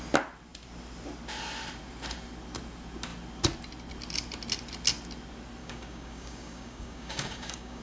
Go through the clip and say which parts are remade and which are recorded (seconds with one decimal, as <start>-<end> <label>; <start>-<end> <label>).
0.0-5.6 recorded; 5.6-7.8 remade